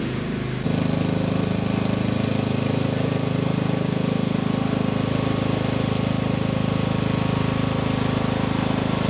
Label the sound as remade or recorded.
recorded